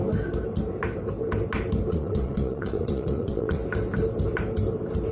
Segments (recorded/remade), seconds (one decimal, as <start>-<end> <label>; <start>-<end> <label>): 0.0-1.9 recorded; 1.9-3.6 remade; 3.6-5.1 recorded